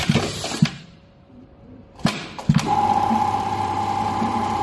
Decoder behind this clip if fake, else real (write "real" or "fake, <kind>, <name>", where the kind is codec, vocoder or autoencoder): fake, vocoder, BigVGAN v2